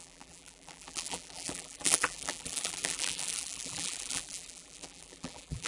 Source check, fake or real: fake